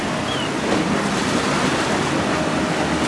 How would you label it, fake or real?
real